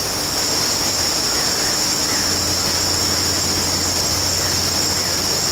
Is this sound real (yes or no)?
yes